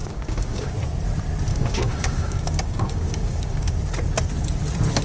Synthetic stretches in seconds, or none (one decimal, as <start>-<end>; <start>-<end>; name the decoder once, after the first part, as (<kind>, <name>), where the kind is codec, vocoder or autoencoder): 0.0-0.7 (codec, DAC); 1.5-3.8

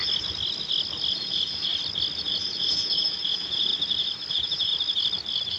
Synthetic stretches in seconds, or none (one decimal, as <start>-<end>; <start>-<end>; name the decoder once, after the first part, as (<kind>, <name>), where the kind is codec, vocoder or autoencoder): 1.1-1.7 (vocoder, Vocos); 2.3-3.7; 4.3-4.7

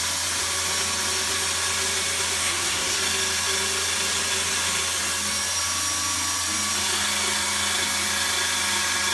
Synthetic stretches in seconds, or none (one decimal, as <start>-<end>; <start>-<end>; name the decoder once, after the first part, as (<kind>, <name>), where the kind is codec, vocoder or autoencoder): 2.4-3.0 (codec, SNAC)